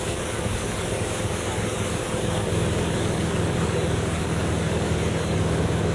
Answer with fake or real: fake